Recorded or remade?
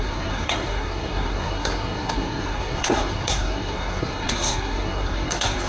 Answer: remade